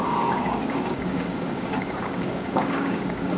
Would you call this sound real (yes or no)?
no